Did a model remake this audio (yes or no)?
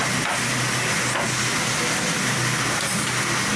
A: no